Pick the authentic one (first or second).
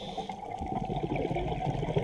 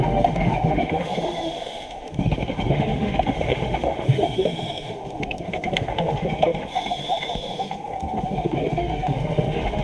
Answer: first